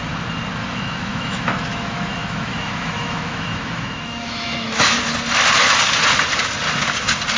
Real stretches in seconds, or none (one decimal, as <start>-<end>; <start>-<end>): 0.0-0.6; 5.0-7.4